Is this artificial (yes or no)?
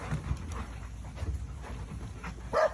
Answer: no